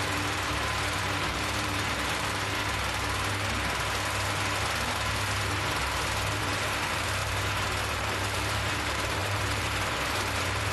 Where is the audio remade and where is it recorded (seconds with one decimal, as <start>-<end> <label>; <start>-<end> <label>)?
0.0-2.6 remade; 2.6-6.4 recorded; 6.4-7.2 remade; 7.2-7.8 recorded; 7.8-10.7 remade